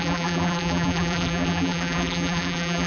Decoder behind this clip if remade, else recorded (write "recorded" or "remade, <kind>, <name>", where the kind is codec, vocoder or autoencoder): remade, vocoder, BigVGAN v2